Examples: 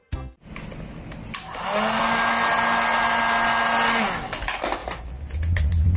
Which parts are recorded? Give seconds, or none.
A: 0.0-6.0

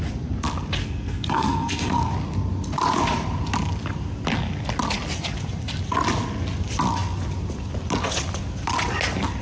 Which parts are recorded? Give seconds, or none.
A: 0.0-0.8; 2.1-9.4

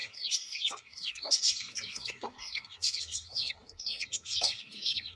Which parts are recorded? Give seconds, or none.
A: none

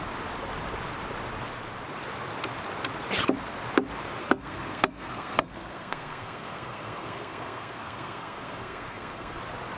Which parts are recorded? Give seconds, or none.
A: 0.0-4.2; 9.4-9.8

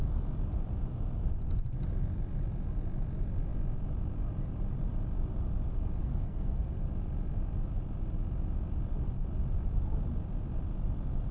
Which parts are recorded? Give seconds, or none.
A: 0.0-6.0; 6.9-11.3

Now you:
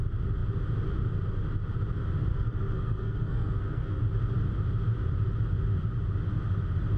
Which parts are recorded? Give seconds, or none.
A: 0.0-2.3; 4.0-7.0

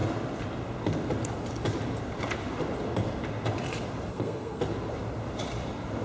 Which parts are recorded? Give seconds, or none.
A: 0.0-4.1; 4.6-6.0

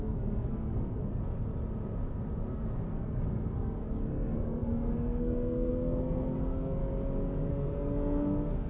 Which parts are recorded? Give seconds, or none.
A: 1.2-2.5; 6.8-7.5